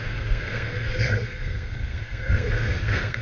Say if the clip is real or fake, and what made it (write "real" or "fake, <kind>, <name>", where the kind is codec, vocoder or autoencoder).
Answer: fake, codec, SNAC